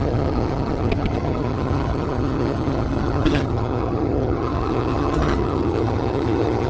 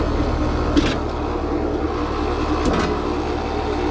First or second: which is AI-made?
first